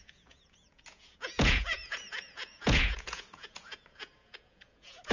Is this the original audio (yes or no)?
no